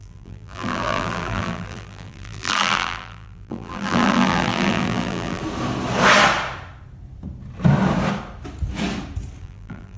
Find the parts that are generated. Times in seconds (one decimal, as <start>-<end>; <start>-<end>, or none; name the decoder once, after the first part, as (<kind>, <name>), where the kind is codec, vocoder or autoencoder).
0.0-5.4 (vocoder, BigVGAN v2); 9.4-10.0